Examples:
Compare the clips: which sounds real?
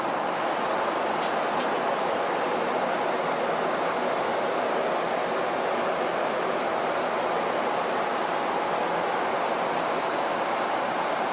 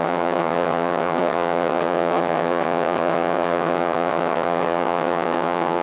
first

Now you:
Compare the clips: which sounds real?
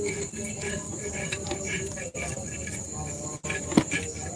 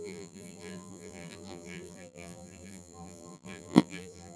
first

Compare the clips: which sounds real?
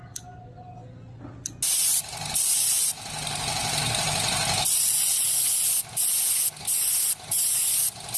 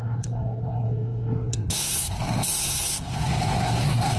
first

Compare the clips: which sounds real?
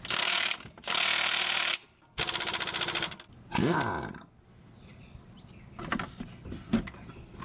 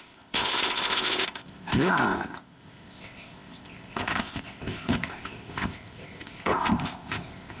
first